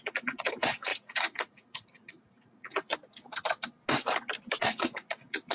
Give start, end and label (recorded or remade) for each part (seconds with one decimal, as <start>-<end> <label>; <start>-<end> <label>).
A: 0.0-2.9 remade; 2.9-4.6 recorded; 4.6-5.5 remade